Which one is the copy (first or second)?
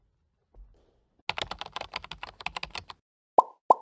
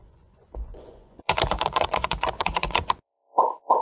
second